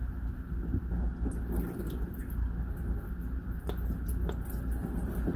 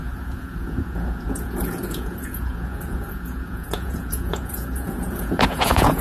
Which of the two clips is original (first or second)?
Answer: first